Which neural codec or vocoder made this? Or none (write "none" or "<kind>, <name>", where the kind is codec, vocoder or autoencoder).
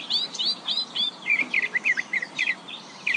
vocoder, BigVGAN v2